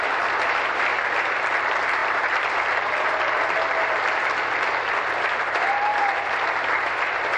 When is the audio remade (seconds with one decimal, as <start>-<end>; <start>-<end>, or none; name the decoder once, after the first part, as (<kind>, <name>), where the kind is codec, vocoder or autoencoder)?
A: 0.0-5.9 (vocoder, BigVGAN v2); 7.0-7.4

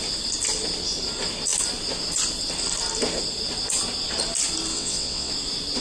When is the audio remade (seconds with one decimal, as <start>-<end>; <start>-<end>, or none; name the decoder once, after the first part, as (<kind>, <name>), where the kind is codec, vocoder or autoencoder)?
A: 4.7-5.3 (vocoder, WaveNeXt)